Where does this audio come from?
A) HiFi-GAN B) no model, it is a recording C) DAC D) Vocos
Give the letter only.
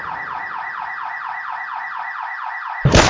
B